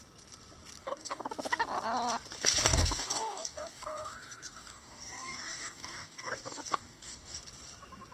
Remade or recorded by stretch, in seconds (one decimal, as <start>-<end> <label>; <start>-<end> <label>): 0.0-0.8 recorded; 0.8-1.3 remade; 1.3-2.7 recorded; 2.7-7.4 remade; 7.4-8.1 recorded

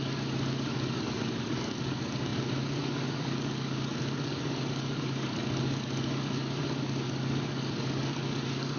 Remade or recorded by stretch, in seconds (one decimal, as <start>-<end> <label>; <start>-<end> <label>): 0.0-8.8 remade

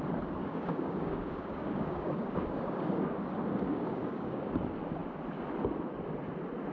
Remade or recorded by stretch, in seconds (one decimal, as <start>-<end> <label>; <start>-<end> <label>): 0.0-0.4 recorded; 0.4-3.2 remade; 3.2-3.7 recorded; 3.7-4.5 remade; 4.5-6.7 recorded

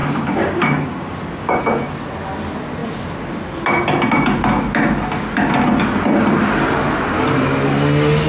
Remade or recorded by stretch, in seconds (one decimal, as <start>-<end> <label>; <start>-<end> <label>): 0.0-1.6 remade; 1.6-8.3 recorded

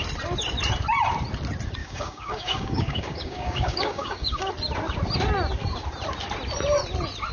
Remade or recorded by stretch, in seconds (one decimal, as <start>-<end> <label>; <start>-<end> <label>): 0.0-1.8 recorded; 1.8-4.5 remade; 4.5-7.3 recorded